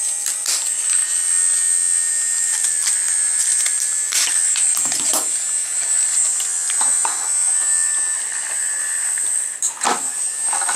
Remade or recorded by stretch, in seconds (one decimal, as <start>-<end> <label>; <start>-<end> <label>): 0.0-1.0 remade; 1.0-2.1 recorded; 2.1-10.8 remade